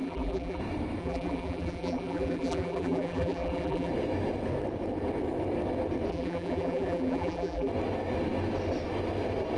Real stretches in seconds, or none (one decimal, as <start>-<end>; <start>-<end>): 0.6-1.0; 3.9-6.1; 7.7-9.6

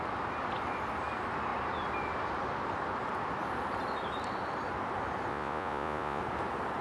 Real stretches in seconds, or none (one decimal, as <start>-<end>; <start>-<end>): 0.0-5.3; 6.2-6.8

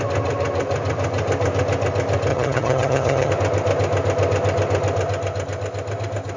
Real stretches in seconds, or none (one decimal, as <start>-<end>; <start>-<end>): 0.0-2.3; 3.3-6.4

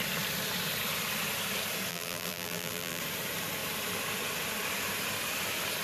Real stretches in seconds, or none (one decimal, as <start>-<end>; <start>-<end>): 0.0-1.9; 3.0-5.8

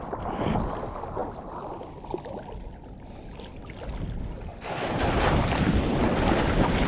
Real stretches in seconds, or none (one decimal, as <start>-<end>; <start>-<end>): 0.0-1.2; 3.6-4.5; 5.4-6.9

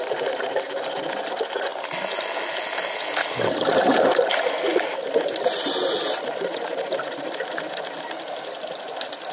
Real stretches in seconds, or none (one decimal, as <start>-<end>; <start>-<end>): 0.0-4.7; 7.5-9.3